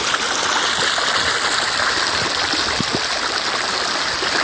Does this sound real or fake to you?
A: real